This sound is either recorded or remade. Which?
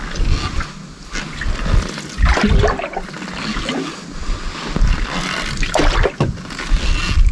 recorded